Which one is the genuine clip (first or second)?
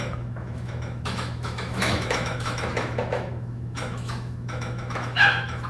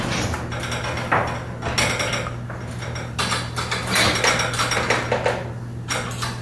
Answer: second